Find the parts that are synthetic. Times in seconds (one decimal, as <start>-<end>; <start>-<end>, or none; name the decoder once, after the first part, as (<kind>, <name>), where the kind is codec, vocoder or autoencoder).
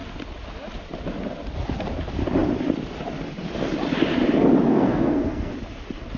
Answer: 4.7-5.5 (codec, SNAC)